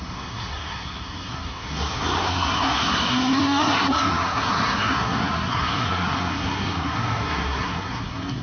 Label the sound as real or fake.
fake